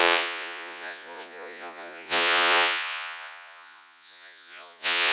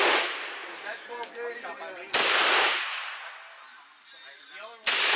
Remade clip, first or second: first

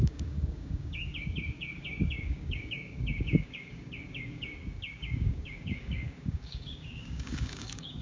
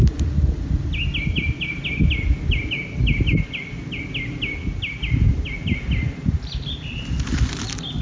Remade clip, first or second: first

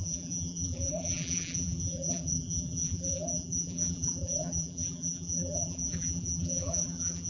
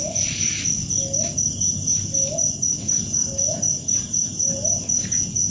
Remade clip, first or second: first